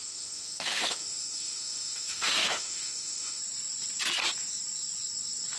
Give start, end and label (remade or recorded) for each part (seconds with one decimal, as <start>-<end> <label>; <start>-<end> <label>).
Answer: 0.0-3.4 remade; 3.4-5.6 recorded